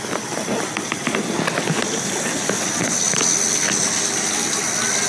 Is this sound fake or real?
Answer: real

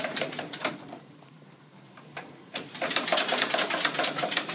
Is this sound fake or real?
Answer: fake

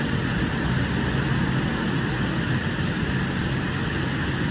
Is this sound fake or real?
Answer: real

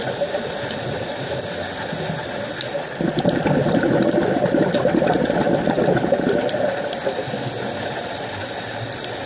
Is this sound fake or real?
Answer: real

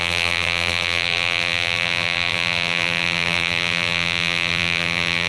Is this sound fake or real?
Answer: fake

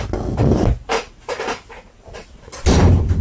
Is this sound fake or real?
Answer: real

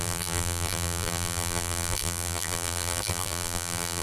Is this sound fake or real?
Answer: fake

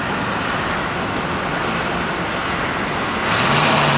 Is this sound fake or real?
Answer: real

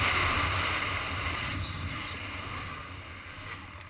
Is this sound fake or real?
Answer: fake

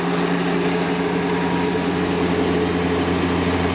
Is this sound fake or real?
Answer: real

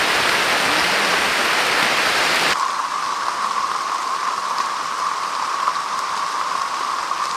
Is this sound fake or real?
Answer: real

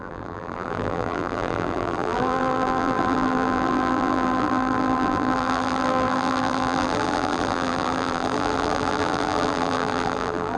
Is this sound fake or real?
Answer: fake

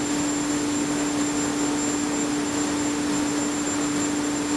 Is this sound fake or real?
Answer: real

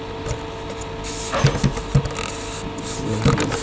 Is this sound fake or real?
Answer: real